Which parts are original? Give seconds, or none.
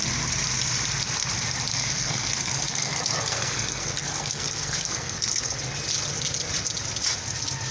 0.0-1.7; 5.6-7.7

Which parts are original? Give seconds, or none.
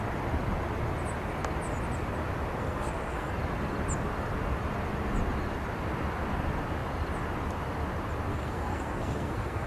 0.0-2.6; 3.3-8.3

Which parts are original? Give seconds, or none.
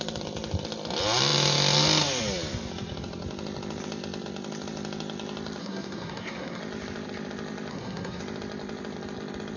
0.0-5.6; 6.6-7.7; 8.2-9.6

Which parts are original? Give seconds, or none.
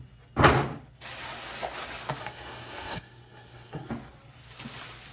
0.0-2.2; 3.9-5.1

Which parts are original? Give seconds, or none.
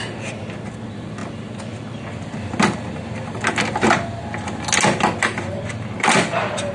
0.0-6.7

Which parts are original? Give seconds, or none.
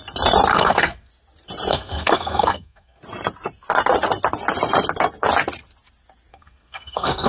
0.0-0.5; 1.1-1.7; 3.0-6.3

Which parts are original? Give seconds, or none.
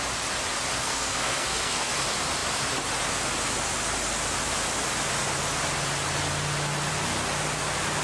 0.0-0.8; 1.9-8.0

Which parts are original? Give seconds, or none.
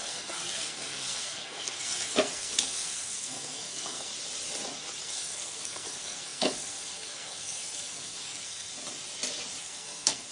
4.1-5.0; 8.7-9.6